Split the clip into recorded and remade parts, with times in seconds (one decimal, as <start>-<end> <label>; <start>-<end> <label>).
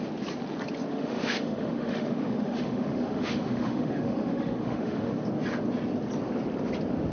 0.0-0.9 recorded; 0.9-5.1 remade; 5.1-7.1 recorded